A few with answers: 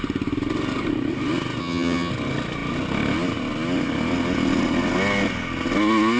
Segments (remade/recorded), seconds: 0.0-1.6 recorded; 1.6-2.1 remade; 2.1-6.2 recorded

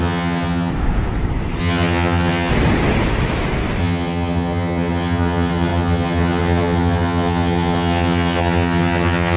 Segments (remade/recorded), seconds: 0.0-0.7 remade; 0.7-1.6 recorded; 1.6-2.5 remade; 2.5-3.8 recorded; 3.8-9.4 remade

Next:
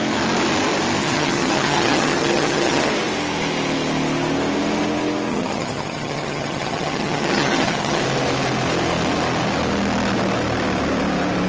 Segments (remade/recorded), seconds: 0.0-1.0 recorded; 1.0-2.9 remade; 2.9-5.3 recorded; 5.3-8.0 remade; 8.0-11.5 recorded